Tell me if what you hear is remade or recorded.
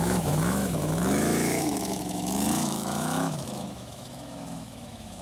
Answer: remade